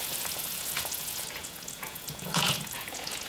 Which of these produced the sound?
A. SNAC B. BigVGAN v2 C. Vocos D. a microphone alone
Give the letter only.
C